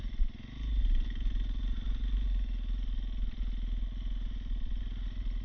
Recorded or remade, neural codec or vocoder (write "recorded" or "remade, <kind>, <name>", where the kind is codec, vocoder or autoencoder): recorded